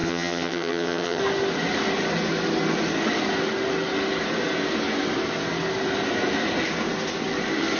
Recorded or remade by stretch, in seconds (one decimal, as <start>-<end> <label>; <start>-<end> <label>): 0.0-1.2 remade; 1.2-7.8 recorded